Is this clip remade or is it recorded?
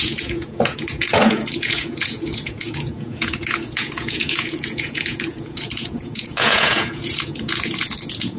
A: remade